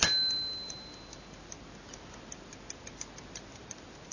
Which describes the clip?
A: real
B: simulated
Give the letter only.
A